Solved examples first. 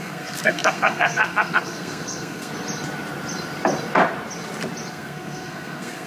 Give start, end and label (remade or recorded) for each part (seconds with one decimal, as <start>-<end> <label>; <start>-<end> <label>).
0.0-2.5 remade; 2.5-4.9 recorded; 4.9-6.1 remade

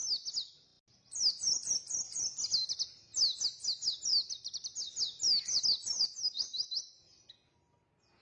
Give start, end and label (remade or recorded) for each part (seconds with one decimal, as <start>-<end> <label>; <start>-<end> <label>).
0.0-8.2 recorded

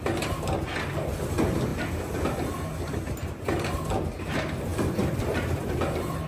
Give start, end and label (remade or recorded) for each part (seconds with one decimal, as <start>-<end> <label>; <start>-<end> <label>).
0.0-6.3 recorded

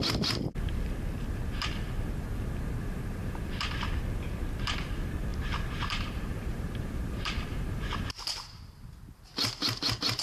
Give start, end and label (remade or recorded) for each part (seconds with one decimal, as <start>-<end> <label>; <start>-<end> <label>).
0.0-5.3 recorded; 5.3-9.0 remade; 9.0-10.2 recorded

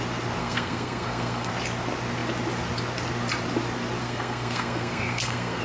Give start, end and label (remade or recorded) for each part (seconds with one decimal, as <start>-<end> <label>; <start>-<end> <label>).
0.0-0.4 recorded; 0.4-1.5 remade; 1.5-4.0 recorded; 4.0-5.6 remade